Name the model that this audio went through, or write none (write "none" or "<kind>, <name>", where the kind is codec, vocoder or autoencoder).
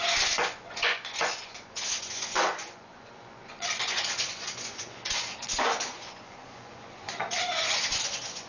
vocoder, Vocos